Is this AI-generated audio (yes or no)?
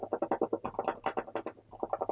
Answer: no